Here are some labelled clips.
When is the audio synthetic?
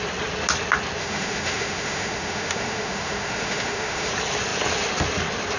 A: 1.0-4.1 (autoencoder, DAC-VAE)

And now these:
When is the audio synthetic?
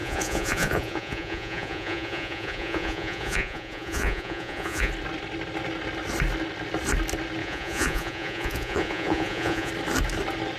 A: 0.0-4.9 (vocoder, Vocos); 7.4-9.7